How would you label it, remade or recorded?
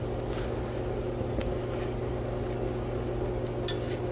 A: recorded